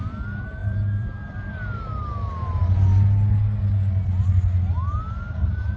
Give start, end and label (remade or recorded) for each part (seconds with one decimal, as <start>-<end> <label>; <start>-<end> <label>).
0.0-0.6 recorded; 0.6-1.5 remade; 1.5-5.8 recorded